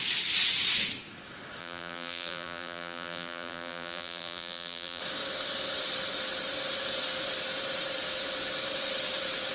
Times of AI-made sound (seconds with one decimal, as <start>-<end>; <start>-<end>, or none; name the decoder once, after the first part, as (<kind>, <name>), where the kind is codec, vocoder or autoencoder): 1.6-5.0 (vocoder, BigVGAN v2)